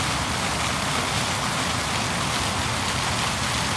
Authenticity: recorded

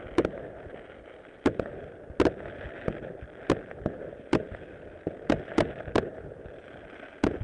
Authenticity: recorded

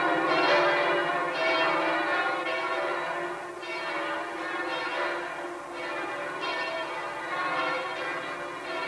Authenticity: recorded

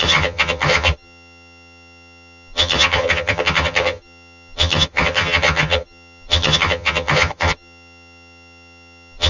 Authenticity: remade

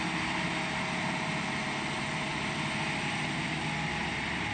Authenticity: recorded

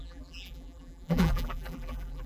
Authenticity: remade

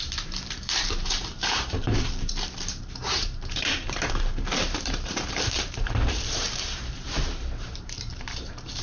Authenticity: remade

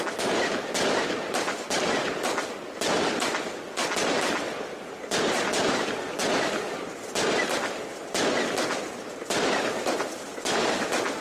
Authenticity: recorded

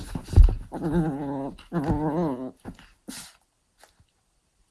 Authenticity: recorded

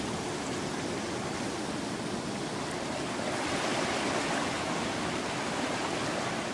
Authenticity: recorded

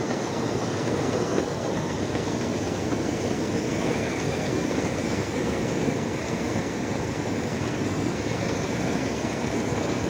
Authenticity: remade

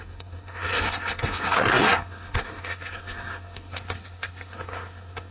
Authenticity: remade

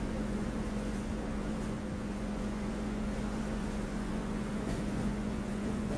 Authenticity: remade